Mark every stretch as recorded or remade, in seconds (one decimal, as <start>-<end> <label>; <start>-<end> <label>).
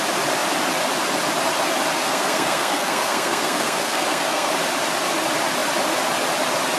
0.0-2.0 recorded; 2.0-4.5 remade; 4.5-6.8 recorded